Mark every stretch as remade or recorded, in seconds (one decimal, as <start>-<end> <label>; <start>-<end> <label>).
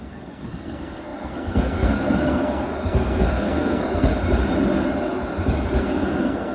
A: 0.0-4.1 remade; 4.1-5.8 recorded; 5.8-6.5 remade